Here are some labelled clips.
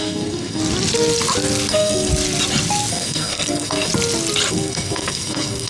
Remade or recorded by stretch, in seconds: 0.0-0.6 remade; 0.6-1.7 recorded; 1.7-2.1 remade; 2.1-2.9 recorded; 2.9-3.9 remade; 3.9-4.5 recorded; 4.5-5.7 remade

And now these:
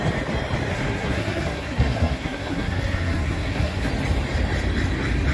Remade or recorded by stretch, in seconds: 0.0-0.7 recorded; 0.7-3.9 remade; 3.9-5.3 recorded

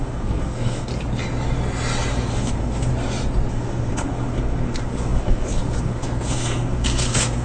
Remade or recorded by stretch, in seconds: 0.0-0.9 remade; 0.9-2.3 recorded; 2.3-2.9 remade; 2.9-3.5 recorded; 3.5-7.4 remade

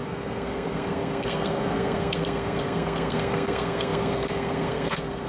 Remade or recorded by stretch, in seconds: 0.0-5.3 remade

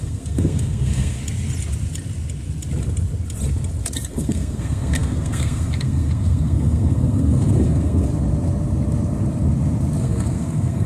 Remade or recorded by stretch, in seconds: 0.0-1.2 remade; 1.2-4.1 recorded; 4.1-8.1 remade; 8.1-10.0 recorded; 10.0-10.9 remade